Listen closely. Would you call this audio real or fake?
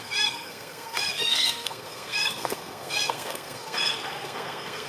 fake